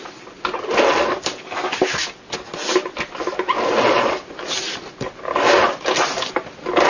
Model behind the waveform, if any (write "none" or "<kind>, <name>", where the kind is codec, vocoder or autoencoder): none